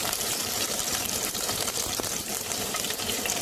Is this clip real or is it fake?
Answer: fake